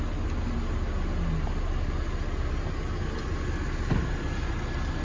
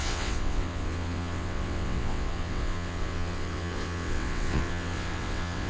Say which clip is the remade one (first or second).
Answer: second